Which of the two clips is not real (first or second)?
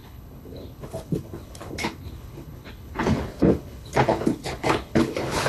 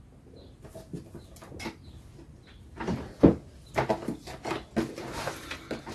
first